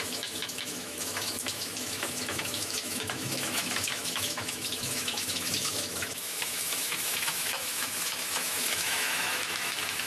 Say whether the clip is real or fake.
fake